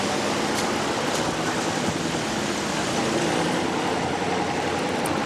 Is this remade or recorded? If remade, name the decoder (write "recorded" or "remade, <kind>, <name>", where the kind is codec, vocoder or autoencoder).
recorded